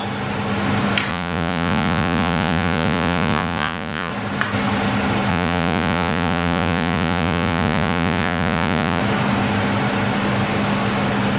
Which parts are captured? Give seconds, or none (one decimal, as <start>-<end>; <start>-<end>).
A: 0.0-1.1; 4.1-5.3; 9.0-11.4